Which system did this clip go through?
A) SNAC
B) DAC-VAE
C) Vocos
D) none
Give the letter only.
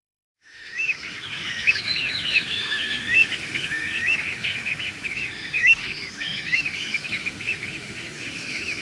B